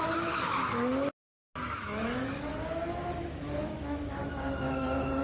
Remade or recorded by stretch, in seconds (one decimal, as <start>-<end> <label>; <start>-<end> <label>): 0.0-0.9 remade; 0.9-1.8 recorded; 1.8-2.5 remade; 2.5-3.1 recorded; 3.1-5.2 remade